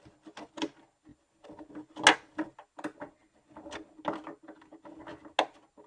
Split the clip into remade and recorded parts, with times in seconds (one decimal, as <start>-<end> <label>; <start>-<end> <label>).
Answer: 0.0-5.9 recorded